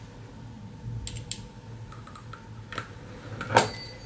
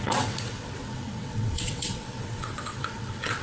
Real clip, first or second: first